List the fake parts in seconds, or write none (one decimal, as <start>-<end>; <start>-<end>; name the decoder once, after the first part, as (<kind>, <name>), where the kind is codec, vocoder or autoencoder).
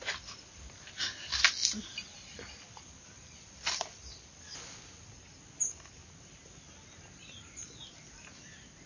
1.3-5.4 (vocoder, BigVGAN v2); 6.0-6.7